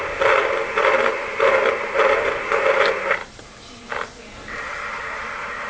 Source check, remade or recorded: recorded